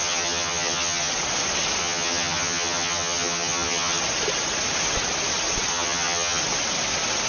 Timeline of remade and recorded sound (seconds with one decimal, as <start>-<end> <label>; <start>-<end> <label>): 0.0-1.1 remade; 1.1-1.8 recorded; 1.8-4.0 remade; 4.0-5.7 recorded; 5.7-6.4 remade; 6.4-7.3 recorded